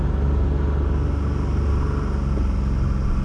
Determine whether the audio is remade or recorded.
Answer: recorded